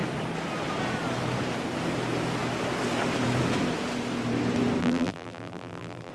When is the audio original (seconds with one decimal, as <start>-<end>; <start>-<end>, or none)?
0.0-4.8